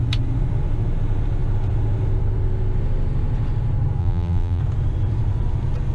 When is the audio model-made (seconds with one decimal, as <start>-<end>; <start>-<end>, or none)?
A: 4.0-4.6